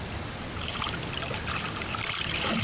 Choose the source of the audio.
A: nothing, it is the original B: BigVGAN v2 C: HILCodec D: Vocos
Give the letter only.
A